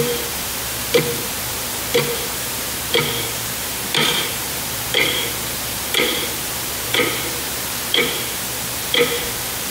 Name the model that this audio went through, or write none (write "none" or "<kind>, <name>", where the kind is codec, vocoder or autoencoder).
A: vocoder, BigVGAN v2